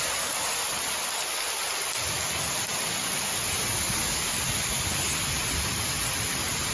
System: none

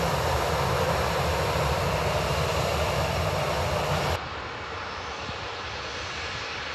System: none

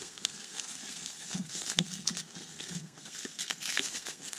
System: codec, SNAC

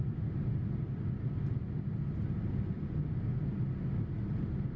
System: none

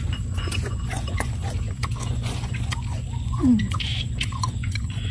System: vocoder, Vocos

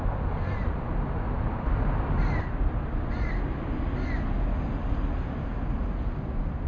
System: none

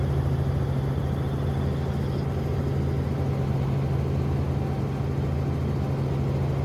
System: none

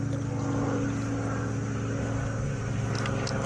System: none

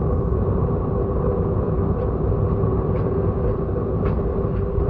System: none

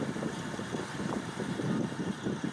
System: vocoder, BigVGAN v2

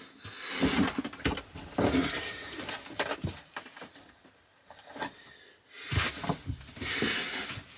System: none